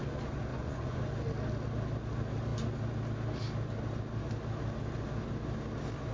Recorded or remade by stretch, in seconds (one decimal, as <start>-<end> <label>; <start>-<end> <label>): 0.0-0.5 recorded; 0.5-1.0 remade; 1.0-6.1 recorded

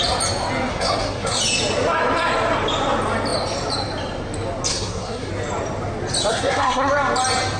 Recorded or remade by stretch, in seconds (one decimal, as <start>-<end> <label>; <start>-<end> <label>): 0.0-0.7 recorded; 0.7-1.4 remade; 1.4-4.7 recorded; 4.7-5.3 remade; 5.3-6.3 recorded; 6.3-6.9 remade; 6.9-7.6 recorded